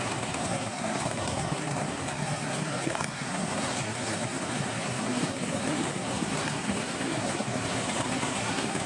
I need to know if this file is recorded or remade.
remade